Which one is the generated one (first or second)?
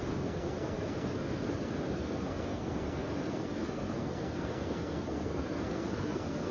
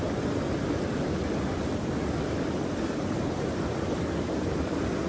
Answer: first